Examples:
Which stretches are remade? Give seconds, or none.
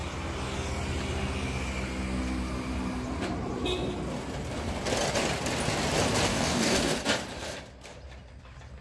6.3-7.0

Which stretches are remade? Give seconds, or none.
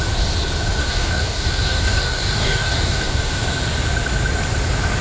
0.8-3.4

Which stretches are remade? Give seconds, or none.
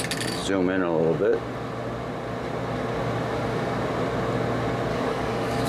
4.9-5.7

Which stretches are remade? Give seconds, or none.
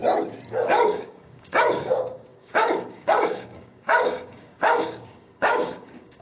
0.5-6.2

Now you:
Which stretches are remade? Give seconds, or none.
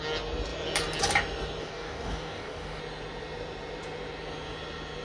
1.6-2.8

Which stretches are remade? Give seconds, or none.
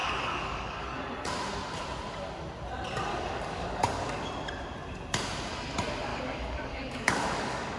0.0-1.0; 3.1-4.3; 6.1-7.8